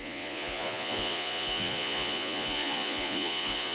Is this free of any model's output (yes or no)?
no